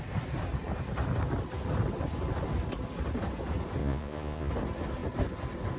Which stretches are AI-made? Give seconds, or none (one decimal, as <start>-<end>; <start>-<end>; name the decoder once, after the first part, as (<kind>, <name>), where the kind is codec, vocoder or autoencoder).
3.8-4.5 (vocoder, Vocos)